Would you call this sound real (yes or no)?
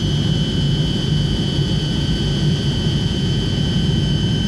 no